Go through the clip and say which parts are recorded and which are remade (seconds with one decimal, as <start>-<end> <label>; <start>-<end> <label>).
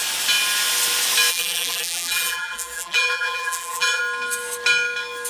0.0-1.3 recorded; 1.3-4.0 remade; 4.0-5.3 recorded